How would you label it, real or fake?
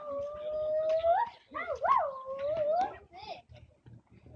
real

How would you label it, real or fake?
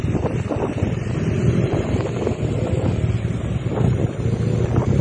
real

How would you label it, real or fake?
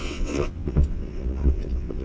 fake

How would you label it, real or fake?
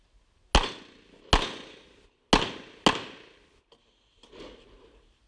real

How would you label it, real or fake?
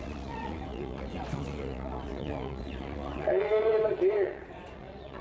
fake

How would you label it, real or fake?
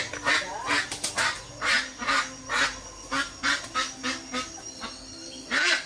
real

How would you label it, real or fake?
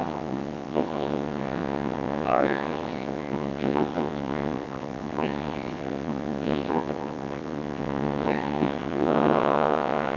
fake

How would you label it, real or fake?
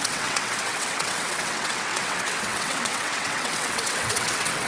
fake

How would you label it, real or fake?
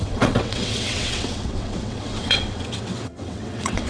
fake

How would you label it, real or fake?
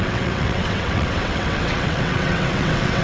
fake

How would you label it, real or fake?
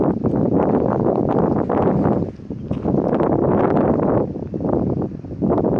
real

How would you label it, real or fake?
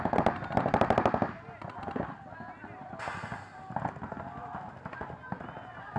real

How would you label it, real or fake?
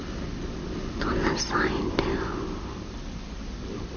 real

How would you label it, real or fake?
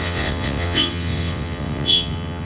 fake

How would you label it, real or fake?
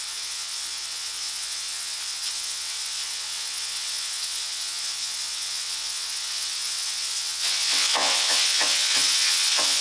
fake